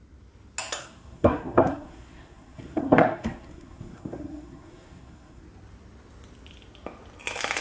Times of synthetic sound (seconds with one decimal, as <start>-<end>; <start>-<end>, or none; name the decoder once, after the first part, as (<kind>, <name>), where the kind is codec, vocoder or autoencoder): 0.8-5.4 (codec, SNAC)